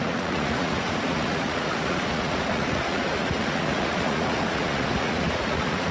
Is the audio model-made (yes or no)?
yes